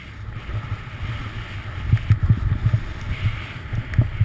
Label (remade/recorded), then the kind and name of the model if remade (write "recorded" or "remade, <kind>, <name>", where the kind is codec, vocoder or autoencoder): recorded